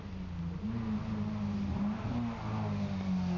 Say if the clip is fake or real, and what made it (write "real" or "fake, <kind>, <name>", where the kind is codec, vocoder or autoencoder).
real